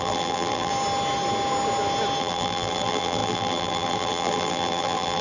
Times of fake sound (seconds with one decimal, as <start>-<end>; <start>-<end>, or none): 0.0-0.7; 2.2-5.2